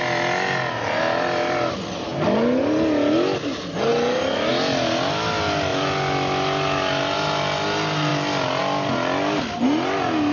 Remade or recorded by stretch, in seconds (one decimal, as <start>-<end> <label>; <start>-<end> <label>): 0.0-10.3 recorded